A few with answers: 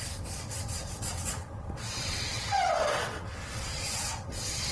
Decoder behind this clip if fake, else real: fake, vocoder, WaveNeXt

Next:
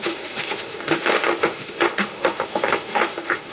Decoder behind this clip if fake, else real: fake, autoencoder, DAC-VAE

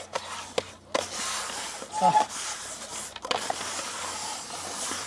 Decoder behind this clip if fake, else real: real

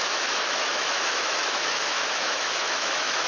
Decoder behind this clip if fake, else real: fake, autoencoder, DAC-VAE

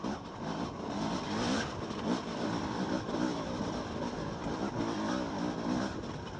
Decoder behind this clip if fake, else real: real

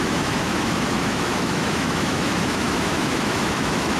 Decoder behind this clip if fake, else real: fake, autoencoder, DAC-VAE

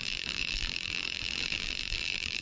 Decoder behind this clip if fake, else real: fake, vocoder, BigVGAN v2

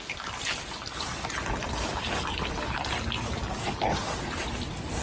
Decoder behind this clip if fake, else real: real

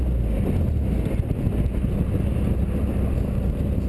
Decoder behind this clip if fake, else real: real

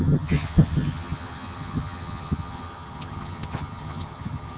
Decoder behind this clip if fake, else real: fake, vocoder, HiFi-GAN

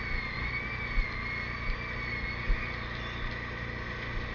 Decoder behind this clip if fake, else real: real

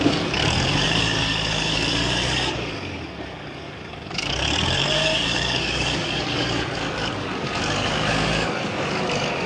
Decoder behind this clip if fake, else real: fake, codec, DAC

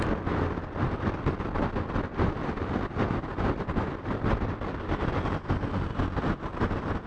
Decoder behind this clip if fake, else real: real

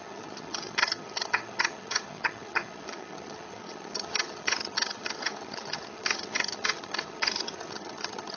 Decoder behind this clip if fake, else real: fake, vocoder, HiFi-GAN